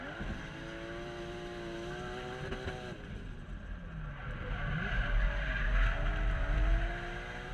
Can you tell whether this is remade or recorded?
recorded